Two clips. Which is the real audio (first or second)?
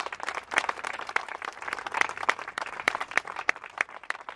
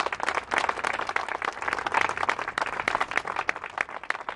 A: second